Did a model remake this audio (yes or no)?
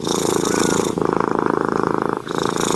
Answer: no